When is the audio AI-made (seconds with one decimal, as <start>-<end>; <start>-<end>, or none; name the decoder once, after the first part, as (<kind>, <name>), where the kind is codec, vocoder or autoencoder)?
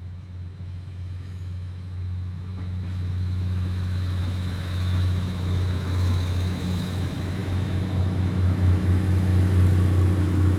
0.0-9.3 (autoencoder, DAC-VAE); 10.2-10.6